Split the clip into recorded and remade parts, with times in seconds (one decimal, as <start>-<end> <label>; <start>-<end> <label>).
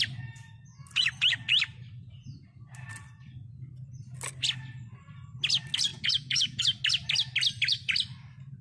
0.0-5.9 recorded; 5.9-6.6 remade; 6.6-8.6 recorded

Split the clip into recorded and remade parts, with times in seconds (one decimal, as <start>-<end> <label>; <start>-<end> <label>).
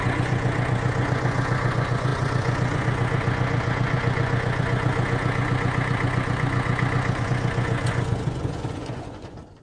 0.0-9.6 remade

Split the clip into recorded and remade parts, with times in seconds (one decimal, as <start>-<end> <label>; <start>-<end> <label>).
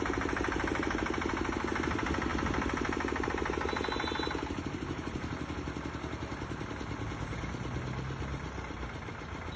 0.0-9.6 recorded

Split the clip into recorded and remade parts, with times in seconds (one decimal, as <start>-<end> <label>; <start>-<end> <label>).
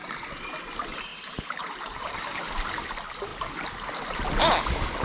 0.0-1.1 recorded; 1.1-2.4 remade; 2.4-5.0 recorded